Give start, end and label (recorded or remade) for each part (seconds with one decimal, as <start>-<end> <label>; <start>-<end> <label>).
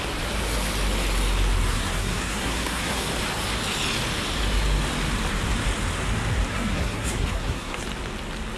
0.0-1.7 recorded; 1.7-3.1 remade; 3.1-6.5 recorded; 6.5-7.8 remade; 7.8-8.6 recorded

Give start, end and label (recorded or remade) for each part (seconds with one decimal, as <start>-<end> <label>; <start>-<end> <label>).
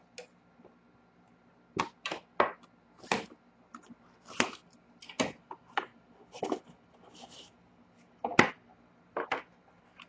0.0-10.1 recorded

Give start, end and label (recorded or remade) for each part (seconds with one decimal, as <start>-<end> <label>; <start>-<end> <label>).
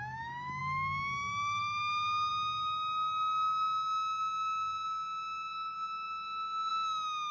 0.0-2.3 remade; 2.3-6.7 recorded; 6.7-7.3 remade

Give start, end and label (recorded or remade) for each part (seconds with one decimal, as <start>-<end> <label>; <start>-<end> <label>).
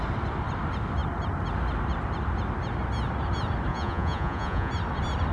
0.0-3.7 recorded; 3.7-4.7 remade; 4.7-5.3 recorded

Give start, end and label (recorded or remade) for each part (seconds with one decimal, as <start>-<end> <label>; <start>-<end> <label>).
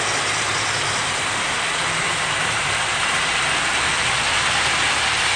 0.0-2.1 recorded; 2.1-3.2 remade; 3.2-5.4 recorded